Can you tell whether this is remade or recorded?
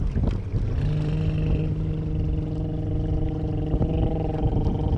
recorded